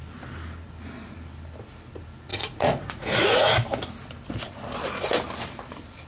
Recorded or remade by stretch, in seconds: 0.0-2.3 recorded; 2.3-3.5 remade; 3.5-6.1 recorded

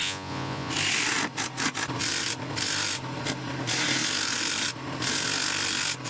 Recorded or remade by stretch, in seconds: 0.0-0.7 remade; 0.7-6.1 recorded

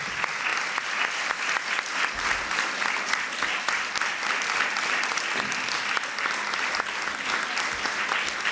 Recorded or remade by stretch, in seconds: 0.0-8.5 recorded

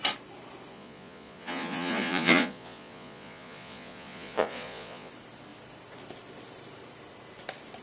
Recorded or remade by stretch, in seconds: 0.0-0.7 recorded; 0.7-5.1 remade; 5.1-7.8 recorded

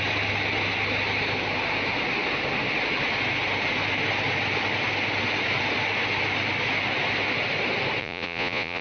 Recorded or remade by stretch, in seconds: 0.0-8.0 recorded; 8.0-8.8 remade

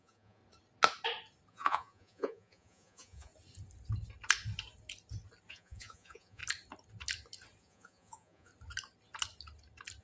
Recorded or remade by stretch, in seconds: 0.0-0.4 remade; 0.4-1.5 recorded; 1.5-3.3 remade; 3.3-5.5 recorded; 5.5-6.4 remade; 6.4-7.6 recorded; 7.6-8.5 remade; 8.5-10.0 recorded

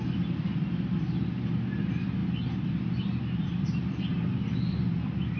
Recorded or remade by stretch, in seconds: 0.0-5.4 recorded